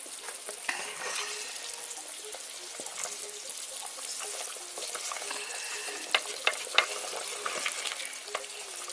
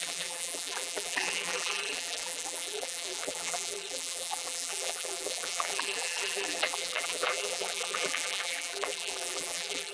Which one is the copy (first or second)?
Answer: second